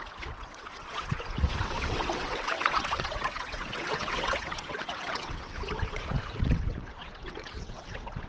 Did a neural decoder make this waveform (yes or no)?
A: yes